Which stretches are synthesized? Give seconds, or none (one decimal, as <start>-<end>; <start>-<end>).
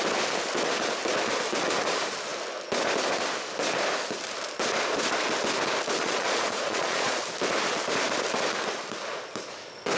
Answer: 6.0-7.2